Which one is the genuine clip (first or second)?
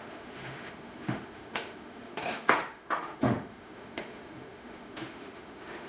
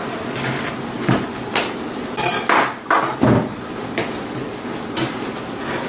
second